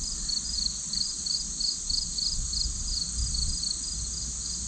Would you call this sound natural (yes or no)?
yes